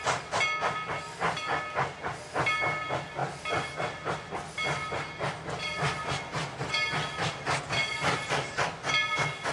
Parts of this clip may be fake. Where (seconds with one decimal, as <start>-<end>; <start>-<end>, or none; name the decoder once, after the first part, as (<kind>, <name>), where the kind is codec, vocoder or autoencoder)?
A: none